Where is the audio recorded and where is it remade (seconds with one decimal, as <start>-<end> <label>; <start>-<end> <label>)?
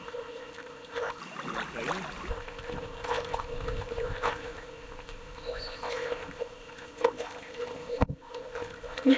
0.0-1.2 remade; 1.2-2.3 recorded; 2.3-9.2 remade